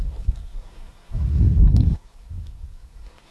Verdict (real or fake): fake